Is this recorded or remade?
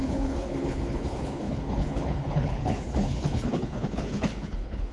remade